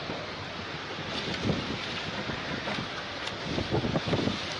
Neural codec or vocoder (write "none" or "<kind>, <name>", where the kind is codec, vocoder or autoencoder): none